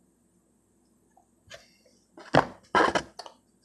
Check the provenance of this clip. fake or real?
real